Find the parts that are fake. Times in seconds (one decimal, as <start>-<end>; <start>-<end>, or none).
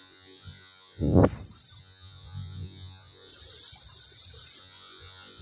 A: 0.0-1.2; 1.8-3.3; 4.6-5.4